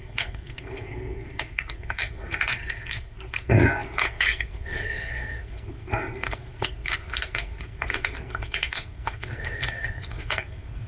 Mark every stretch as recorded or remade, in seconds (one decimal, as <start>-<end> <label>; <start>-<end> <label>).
0.0-10.9 remade